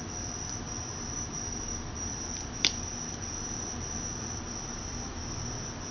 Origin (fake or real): fake